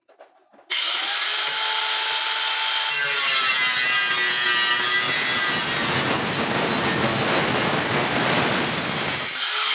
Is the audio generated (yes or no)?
no